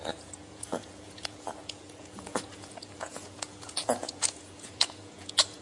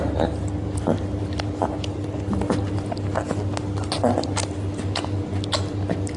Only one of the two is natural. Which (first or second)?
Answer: second